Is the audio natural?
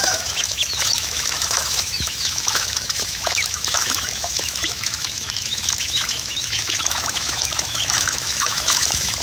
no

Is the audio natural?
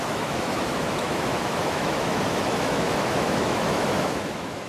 no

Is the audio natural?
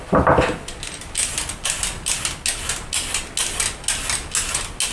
yes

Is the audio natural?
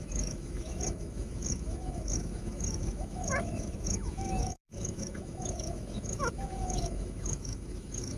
no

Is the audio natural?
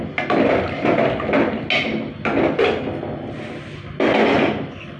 yes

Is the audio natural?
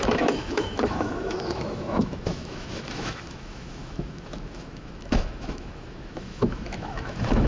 no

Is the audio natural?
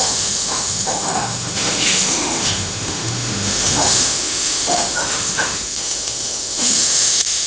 no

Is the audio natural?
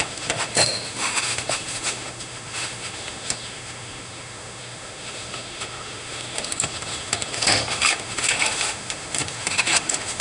no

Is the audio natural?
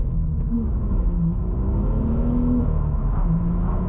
no